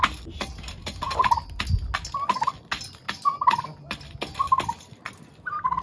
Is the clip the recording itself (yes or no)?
yes